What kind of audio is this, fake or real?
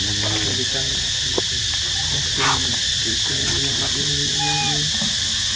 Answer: real